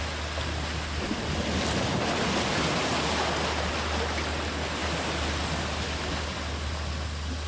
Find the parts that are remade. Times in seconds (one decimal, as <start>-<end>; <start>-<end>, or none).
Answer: none